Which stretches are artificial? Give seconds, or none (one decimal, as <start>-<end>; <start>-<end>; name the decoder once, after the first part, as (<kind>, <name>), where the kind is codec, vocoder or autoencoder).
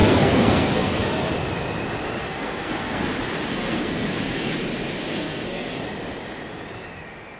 0.0-1.3 (codec, SNAC); 2.2-3.1; 3.5-4.5; 5.1-5.8